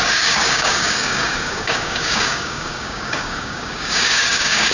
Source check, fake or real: fake